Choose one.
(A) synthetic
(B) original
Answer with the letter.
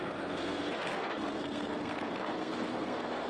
A